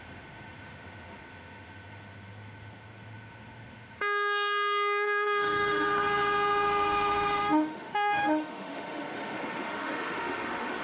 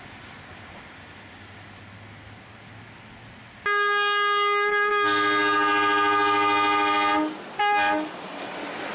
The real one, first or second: second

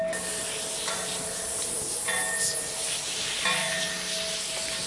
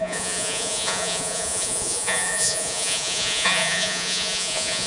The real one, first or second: first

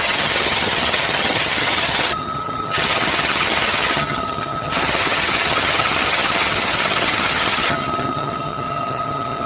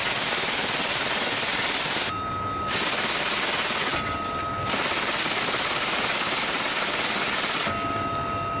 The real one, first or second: second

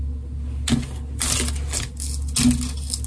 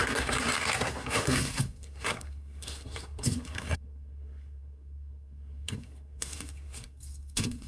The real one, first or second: first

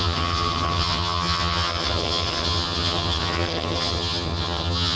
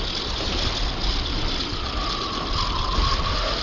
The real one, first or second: second